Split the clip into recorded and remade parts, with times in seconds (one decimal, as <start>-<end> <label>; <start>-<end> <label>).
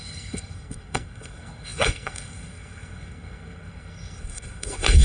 0.0-5.0 remade